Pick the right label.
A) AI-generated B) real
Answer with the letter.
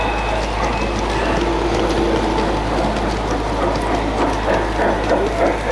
B